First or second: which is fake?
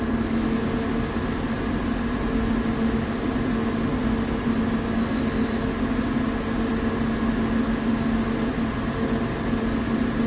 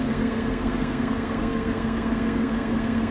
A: second